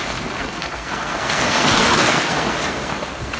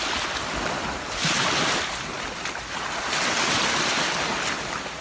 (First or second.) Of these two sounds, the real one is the second